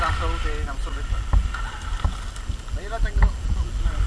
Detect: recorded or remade recorded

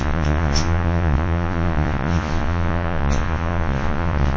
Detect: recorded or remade remade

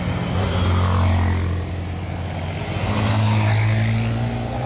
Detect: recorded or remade recorded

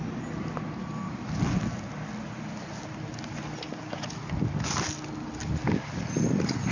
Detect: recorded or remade recorded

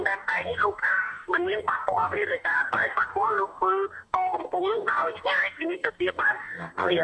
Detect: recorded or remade remade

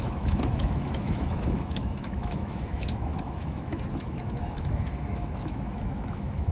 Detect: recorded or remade remade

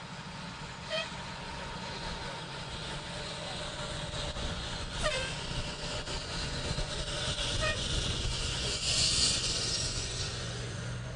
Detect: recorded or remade remade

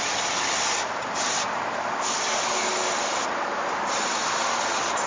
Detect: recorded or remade recorded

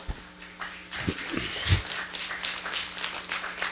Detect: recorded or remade recorded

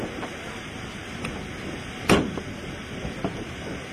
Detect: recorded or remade recorded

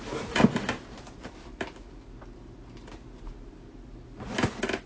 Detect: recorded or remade recorded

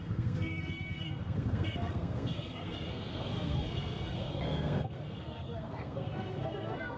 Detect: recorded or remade remade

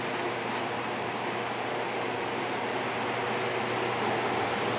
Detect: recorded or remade recorded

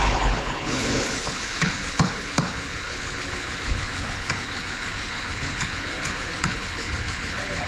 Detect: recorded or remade remade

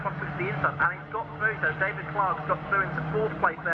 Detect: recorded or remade recorded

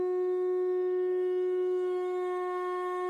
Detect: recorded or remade remade